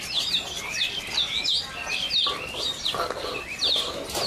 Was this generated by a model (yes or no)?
no